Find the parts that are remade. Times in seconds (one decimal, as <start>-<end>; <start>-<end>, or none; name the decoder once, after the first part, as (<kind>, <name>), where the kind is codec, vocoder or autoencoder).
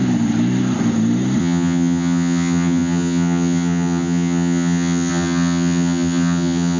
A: 1.4-6.8 (vocoder, HiFi-GAN)